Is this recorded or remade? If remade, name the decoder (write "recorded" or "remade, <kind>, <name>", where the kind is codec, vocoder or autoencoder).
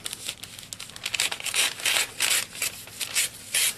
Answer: recorded